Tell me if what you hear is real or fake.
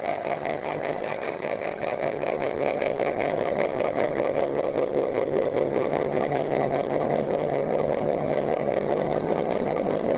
fake